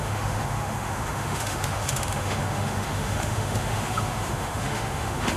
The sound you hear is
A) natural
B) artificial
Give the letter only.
B